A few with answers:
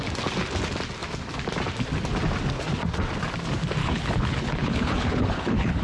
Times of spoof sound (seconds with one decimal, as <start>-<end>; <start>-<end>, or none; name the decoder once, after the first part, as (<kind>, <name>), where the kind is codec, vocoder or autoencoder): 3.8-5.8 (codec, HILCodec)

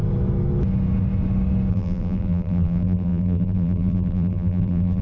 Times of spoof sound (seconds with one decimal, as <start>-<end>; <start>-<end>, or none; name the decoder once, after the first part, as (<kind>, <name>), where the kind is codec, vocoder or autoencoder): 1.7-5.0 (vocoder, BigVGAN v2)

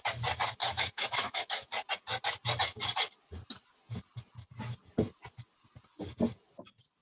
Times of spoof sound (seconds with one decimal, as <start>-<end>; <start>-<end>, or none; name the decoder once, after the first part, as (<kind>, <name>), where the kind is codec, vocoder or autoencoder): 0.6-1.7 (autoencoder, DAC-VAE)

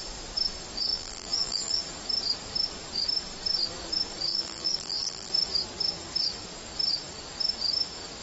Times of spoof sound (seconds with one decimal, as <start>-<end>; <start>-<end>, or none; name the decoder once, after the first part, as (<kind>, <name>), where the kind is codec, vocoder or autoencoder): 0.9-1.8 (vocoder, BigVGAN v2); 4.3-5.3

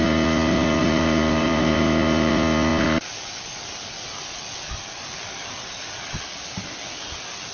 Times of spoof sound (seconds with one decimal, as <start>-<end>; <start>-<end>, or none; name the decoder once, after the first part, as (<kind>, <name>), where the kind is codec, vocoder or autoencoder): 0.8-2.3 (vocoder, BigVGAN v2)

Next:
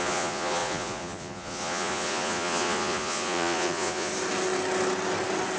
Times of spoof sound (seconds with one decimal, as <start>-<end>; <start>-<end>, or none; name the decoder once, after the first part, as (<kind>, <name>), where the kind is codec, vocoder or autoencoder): 0.0-4.1 (vocoder, Vocos)

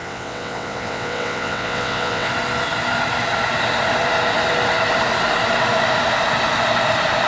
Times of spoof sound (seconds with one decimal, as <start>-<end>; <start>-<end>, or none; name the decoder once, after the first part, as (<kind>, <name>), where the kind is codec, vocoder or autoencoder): 0.0-2.3 (vocoder, WaveNeXt)

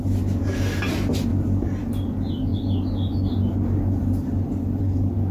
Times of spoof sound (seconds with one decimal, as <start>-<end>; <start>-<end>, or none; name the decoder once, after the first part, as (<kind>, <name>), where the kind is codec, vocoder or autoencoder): none